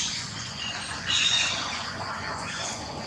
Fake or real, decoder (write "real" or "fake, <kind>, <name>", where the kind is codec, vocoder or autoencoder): fake, vocoder, Vocos